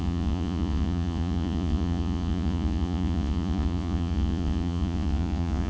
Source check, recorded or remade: remade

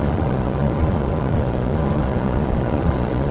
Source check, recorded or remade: remade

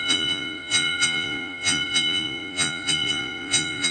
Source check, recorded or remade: remade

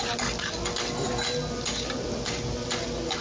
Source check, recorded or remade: recorded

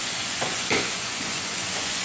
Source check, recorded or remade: remade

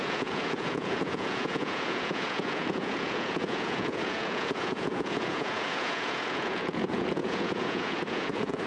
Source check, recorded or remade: remade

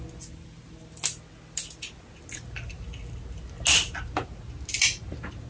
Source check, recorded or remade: recorded